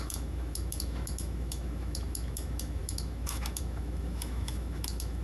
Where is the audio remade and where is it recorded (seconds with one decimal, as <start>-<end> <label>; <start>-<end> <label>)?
0.0-5.2 remade